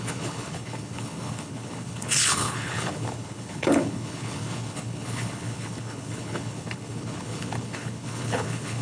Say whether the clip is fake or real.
fake